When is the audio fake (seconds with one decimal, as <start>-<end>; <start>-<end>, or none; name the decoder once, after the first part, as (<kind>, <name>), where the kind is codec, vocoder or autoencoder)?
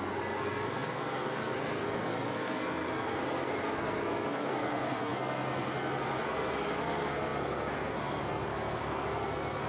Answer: 0.0-9.7 (codec, SNAC)